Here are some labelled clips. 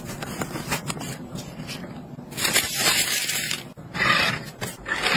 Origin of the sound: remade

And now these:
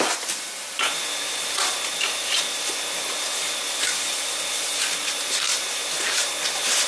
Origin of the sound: remade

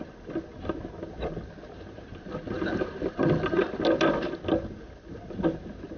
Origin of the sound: recorded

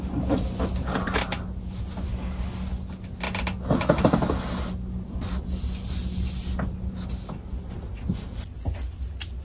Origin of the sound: recorded